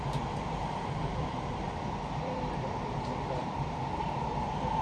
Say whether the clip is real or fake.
fake